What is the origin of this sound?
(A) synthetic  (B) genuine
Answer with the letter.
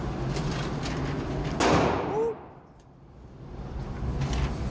B